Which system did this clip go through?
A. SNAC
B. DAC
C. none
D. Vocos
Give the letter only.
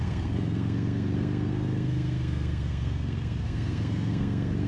A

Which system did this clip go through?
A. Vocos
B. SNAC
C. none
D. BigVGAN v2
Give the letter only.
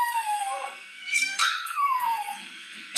B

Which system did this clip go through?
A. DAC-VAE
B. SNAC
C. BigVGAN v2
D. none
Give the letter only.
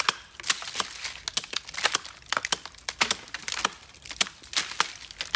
D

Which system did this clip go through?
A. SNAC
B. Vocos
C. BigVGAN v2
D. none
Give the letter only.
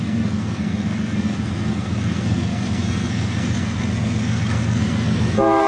A